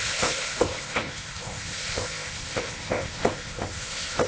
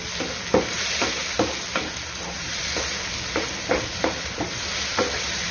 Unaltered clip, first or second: second